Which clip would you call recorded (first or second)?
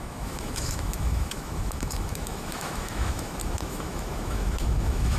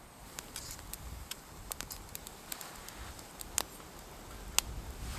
second